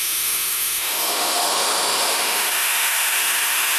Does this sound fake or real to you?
fake